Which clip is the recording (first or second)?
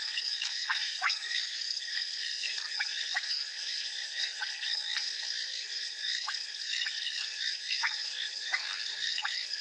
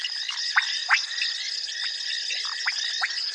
second